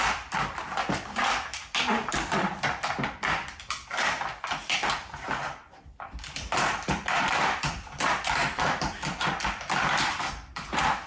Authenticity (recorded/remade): remade